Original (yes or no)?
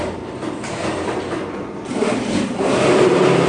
no